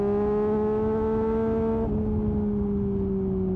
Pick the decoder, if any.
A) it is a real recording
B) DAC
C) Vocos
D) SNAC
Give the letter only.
A